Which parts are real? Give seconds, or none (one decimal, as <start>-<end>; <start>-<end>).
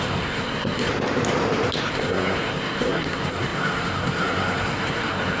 0.9-1.9